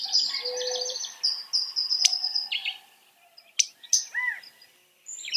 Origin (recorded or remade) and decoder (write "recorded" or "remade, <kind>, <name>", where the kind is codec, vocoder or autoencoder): recorded